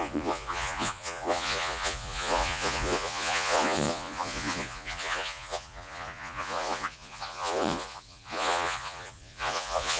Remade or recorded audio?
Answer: remade